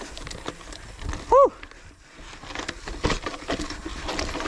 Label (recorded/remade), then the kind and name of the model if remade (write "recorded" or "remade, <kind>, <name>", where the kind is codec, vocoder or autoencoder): recorded